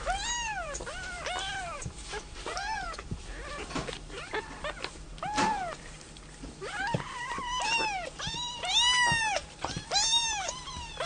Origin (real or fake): fake